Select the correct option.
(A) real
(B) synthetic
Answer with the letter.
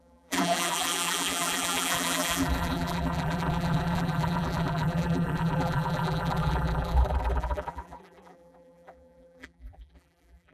B